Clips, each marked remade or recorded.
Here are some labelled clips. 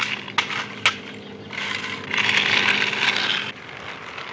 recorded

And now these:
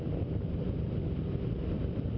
recorded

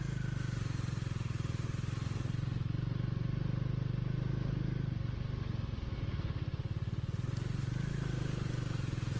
recorded